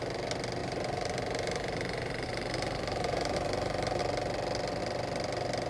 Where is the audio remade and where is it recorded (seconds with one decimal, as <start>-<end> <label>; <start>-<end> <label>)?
0.0-0.6 recorded; 0.6-4.0 remade; 4.0-5.7 recorded